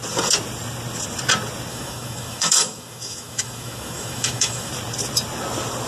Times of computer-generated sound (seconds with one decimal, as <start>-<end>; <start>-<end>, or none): 1.7-4.7

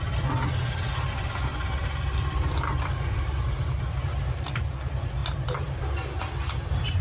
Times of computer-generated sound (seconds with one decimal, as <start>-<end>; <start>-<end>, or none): 1.5-4.7; 5.2-6.2

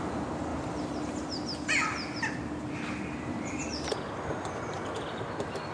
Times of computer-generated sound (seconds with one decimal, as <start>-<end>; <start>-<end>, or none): 0.5-3.7

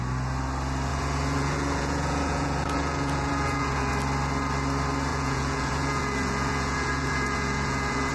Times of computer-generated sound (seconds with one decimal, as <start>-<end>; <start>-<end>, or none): 0.9-3.9; 5.1-8.1

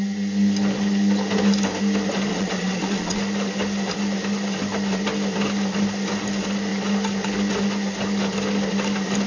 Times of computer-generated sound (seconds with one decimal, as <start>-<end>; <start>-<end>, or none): 2.3-3.2

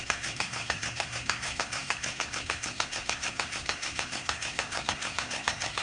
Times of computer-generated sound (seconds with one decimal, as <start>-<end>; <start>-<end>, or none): 0.0-5.8